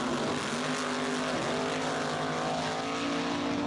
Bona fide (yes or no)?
yes